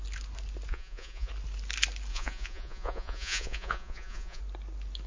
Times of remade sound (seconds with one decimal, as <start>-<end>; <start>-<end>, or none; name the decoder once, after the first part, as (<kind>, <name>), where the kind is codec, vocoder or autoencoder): 0.7-1.3 (vocoder, Vocos); 2.1-4.4